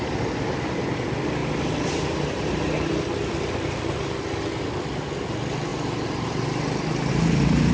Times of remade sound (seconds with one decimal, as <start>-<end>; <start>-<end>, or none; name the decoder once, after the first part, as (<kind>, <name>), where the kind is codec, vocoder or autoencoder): none